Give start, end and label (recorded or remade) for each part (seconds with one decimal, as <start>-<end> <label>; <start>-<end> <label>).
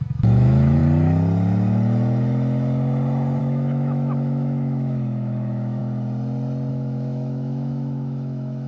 0.0-0.8 remade; 0.8-3.4 recorded; 3.4-5.8 remade; 5.8-6.7 recorded; 6.7-8.7 remade